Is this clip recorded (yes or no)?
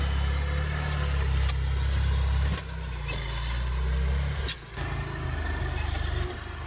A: yes